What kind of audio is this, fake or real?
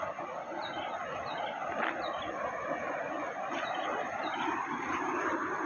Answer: real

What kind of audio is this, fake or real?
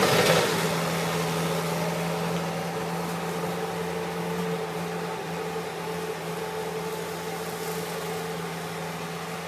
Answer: real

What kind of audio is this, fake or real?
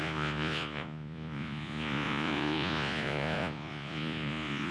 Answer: fake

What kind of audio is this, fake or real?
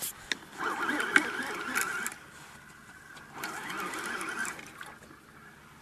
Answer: real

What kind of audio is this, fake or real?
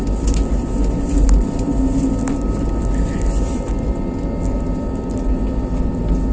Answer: real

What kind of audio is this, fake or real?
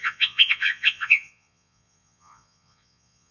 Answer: fake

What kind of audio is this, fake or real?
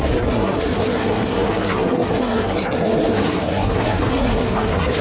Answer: fake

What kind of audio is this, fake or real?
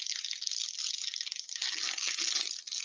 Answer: real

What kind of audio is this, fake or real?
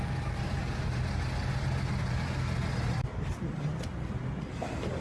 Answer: real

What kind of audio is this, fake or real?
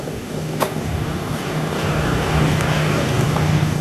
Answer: fake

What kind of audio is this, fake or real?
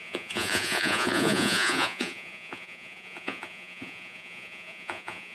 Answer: fake